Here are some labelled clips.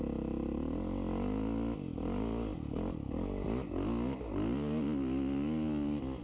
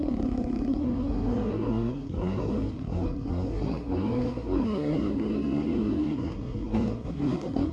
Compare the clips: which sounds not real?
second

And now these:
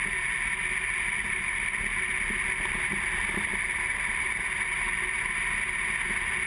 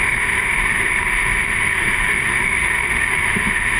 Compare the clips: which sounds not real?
second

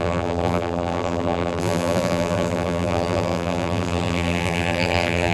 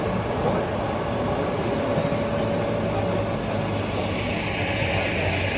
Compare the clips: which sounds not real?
first